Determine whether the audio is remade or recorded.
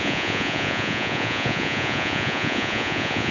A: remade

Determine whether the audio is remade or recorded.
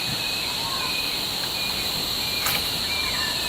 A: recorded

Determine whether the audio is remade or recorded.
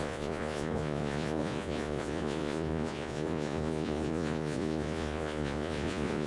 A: remade